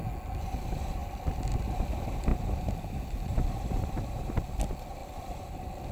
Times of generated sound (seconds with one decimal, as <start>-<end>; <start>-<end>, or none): 3.3-4.4; 5.0-5.9